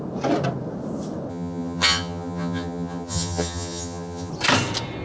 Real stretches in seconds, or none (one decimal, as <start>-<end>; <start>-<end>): 0.0-1.3; 4.3-5.0